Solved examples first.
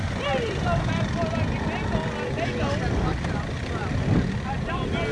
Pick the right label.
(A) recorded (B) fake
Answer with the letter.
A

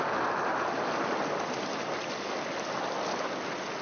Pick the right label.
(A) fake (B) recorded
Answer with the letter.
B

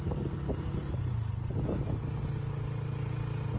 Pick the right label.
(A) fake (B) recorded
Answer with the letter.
B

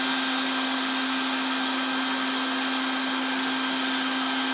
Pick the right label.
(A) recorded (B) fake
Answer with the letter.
A